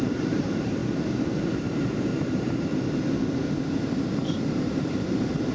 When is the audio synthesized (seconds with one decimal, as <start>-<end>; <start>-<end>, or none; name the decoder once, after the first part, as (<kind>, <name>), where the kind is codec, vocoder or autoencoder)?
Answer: 0.0-0.8 (vocoder, BigVGAN v2); 1.6-2.7; 4.7-5.5